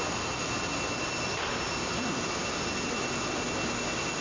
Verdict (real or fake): real